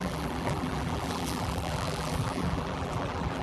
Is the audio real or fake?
fake